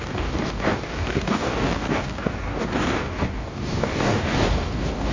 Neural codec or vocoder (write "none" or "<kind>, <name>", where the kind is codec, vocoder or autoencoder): codec, DAC